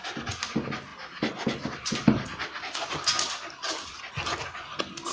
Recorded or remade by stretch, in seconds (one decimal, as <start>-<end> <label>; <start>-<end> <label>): 0.0-5.1 recorded